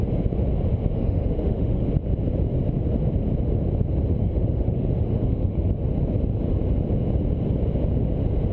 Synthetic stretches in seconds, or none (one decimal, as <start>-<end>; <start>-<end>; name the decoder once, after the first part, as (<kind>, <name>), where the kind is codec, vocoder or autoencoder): 0.7-1.8 (autoencoder, DAC-VAE); 4.2-5.7